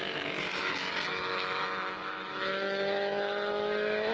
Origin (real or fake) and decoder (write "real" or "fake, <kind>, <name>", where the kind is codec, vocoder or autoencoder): fake, autoencoder, DAC-VAE